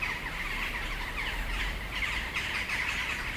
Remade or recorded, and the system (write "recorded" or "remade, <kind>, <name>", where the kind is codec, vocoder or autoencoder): remade, vocoder, BigVGAN v2